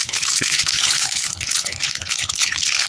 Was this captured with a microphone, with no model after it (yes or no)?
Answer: no